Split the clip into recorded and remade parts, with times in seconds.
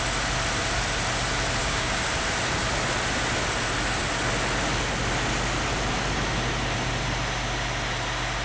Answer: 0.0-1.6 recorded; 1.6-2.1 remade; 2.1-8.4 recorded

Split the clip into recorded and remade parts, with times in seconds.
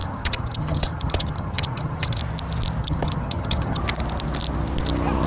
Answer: 0.0-2.2 remade; 2.2-2.8 recorded; 2.8-3.8 remade; 3.8-5.3 recorded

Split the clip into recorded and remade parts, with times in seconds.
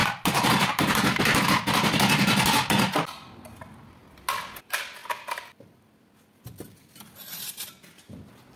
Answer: 0.0-1.2 remade; 1.2-8.6 recorded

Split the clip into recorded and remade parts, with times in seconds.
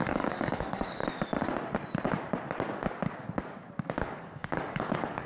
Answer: 0.0-1.0 remade; 1.0-4.0 recorded; 4.0-5.3 remade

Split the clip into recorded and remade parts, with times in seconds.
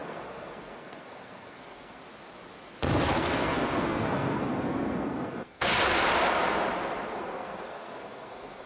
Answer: 0.0-2.0 remade; 2.0-3.1 recorded; 3.1-5.7 remade; 5.7-7.1 recorded; 7.1-8.7 remade